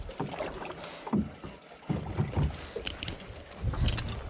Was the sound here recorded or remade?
recorded